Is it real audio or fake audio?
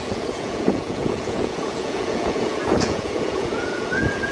fake